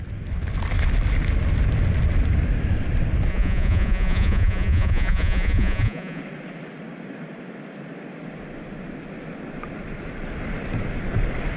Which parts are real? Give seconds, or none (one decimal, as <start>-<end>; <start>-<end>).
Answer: 0.0-3.3; 6.2-11.6